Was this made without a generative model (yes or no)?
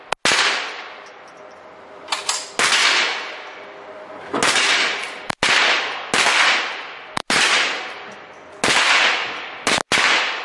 yes